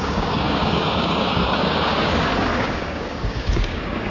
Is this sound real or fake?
fake